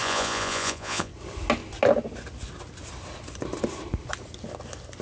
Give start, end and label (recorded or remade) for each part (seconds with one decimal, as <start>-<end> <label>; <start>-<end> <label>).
0.0-1.1 remade; 1.1-5.0 recorded